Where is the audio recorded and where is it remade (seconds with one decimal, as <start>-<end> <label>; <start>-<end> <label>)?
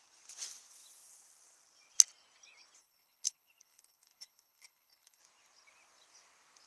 0.0-2.8 recorded; 2.8-5.2 remade; 5.2-6.7 recorded